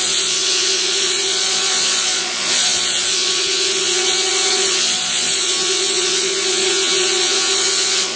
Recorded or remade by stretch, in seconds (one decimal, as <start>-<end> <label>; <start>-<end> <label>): 0.0-8.2 remade